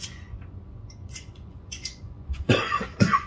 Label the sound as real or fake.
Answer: fake